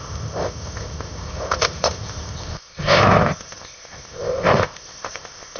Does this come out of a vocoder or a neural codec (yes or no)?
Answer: yes